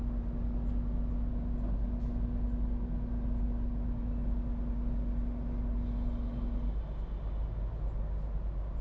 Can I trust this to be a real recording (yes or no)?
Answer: yes